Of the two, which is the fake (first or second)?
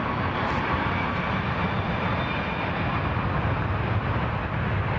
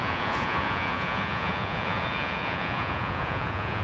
second